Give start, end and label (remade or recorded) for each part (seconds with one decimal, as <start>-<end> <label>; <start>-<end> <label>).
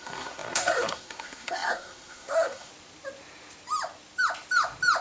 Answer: 0.0-2.7 remade; 2.7-5.0 recorded